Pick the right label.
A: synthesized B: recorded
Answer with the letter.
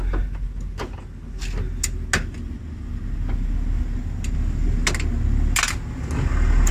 B